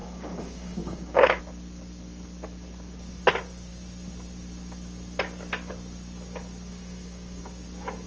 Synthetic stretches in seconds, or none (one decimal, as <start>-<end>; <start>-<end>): 0.0-1.4; 6.7-7.4